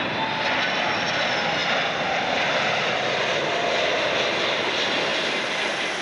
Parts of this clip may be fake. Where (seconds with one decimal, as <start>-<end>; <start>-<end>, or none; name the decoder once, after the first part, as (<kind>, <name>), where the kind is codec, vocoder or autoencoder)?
none